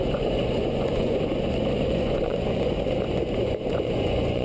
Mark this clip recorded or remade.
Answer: remade